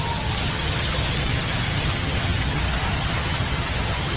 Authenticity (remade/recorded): remade